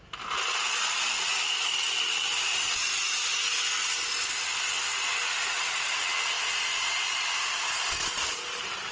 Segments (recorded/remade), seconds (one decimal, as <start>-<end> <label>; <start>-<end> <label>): 0.0-8.9 recorded